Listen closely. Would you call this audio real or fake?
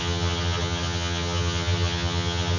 fake